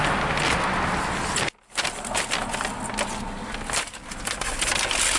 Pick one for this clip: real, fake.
real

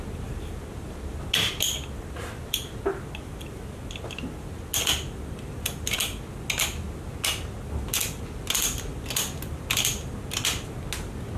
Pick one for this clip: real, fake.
real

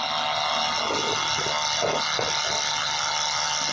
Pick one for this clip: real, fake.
real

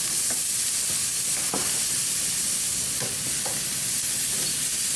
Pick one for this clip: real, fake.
real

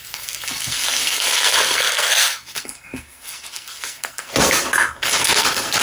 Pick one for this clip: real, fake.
fake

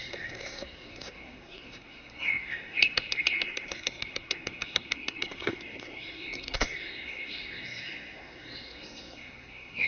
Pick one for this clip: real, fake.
fake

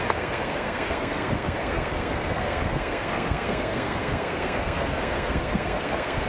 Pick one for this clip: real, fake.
fake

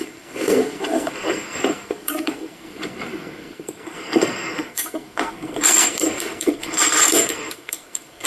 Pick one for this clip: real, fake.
fake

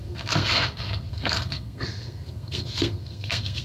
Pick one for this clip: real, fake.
fake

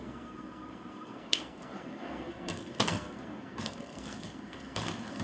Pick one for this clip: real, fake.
fake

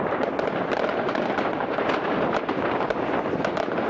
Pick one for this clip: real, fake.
real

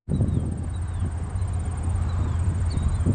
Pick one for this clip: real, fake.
real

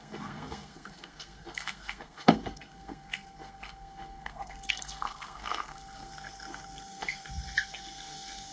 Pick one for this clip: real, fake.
fake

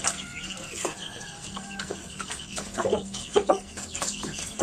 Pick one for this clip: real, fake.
fake